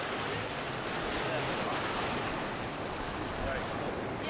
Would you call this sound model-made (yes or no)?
no